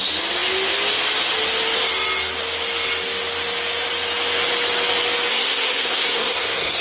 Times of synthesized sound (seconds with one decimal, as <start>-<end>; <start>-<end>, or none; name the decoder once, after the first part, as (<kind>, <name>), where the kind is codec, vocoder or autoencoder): 5.3-6.8 (codec, SNAC)